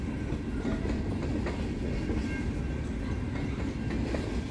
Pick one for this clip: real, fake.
real